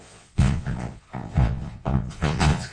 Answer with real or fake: fake